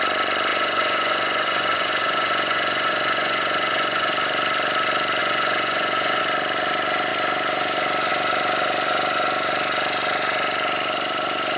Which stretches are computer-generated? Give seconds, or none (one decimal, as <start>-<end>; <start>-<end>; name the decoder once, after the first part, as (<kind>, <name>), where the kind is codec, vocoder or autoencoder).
0.5-4.1 (vocoder, Vocos); 5.2-6.2